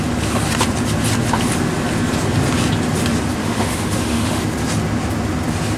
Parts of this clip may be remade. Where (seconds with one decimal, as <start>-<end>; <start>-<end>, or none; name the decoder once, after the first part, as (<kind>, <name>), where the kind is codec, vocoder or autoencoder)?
3.4-4.4 (autoencoder, DAC-VAE)